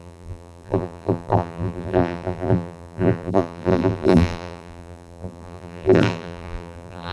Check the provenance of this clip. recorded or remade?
remade